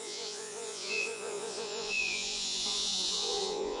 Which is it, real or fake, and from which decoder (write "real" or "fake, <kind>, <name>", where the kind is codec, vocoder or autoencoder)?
fake, vocoder, Vocos